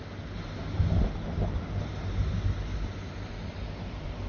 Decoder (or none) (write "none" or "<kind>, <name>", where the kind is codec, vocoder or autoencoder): none